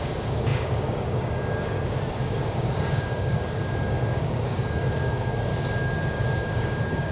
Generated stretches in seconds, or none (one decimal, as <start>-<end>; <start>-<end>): 0.0-5.5; 6.1-7.1